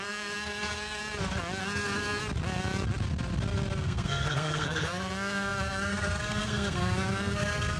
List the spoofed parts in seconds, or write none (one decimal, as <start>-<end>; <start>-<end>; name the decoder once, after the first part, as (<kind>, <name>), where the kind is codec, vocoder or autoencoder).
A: 0.0-1.0 (codec, SNAC); 1.6-2.2; 3.8-7.8

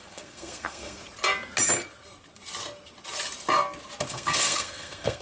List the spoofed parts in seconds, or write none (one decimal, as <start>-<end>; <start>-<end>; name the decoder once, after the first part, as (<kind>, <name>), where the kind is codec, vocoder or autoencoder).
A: 0.0-1.0 (codec, SNAC); 4.1-5.2

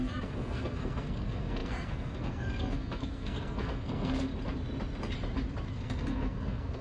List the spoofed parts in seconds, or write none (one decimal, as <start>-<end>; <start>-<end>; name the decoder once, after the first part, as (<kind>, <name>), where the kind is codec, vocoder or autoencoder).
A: 0.0-4.3 (codec, SNAC); 5.7-6.8

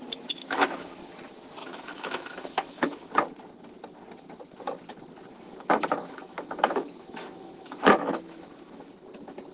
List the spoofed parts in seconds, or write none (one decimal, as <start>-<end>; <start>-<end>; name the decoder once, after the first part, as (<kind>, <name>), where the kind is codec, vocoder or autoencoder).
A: 0.4-1.1 (autoencoder, DAC-VAE); 1.6-3.1; 5.3-8.9

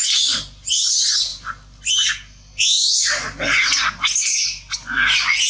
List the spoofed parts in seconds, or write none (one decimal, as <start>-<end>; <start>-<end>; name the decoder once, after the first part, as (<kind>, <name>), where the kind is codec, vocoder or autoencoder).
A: none

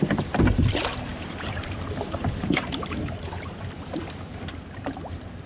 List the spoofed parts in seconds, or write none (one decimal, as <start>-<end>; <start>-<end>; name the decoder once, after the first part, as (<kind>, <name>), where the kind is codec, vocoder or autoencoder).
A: 0.0-5.5 (vocoder, BigVGAN v2)